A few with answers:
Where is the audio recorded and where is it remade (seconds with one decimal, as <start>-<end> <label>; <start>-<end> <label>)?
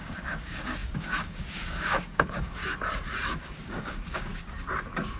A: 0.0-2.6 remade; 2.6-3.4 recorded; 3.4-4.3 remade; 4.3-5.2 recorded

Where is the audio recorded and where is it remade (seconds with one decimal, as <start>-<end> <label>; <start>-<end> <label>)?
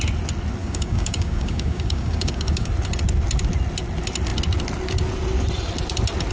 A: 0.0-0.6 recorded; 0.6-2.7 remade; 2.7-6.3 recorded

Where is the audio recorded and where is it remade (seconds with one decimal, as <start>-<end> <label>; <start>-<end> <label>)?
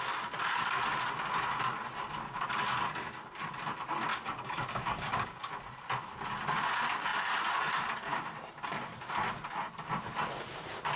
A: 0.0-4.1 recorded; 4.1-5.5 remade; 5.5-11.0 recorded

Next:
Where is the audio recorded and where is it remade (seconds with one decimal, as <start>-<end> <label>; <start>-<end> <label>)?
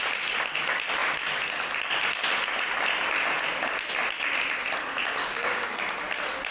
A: 0.0-5.2 recorded; 5.2-5.7 remade; 5.7-6.5 recorded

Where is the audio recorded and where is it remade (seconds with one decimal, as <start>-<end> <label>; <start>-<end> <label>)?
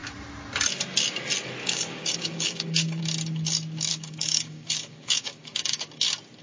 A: 0.0-1.6 recorded; 1.6-3.0 remade; 3.0-3.9 recorded; 3.9-5.9 remade; 5.9-6.4 recorded